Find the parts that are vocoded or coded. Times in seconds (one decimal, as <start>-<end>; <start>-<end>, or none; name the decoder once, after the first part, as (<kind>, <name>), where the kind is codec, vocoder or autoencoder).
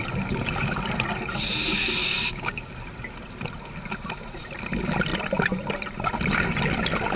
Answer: 2.0-2.7 (codec, DAC)